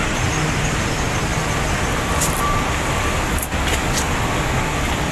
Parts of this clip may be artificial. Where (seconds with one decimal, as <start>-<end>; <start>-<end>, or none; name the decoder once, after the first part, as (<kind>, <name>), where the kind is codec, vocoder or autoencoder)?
none